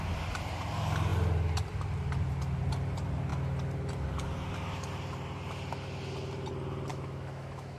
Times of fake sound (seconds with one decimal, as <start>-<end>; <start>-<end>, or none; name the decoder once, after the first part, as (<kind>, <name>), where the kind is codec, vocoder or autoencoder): 6.9-7.8 (autoencoder, DAC-VAE)